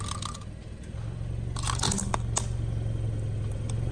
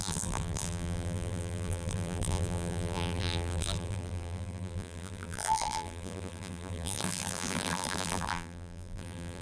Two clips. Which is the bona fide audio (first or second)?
first